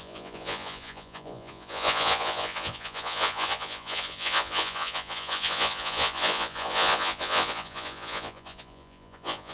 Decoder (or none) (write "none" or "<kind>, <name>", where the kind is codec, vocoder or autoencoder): vocoder, Vocos